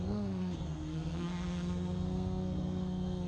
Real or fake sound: fake